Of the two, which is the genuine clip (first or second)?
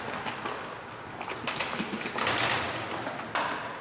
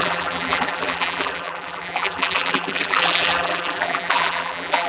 first